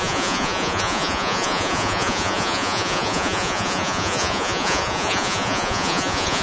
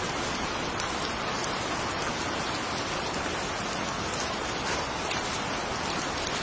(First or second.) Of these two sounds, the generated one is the first